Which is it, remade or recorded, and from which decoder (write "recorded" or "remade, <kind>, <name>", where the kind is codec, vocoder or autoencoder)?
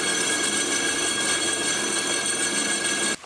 recorded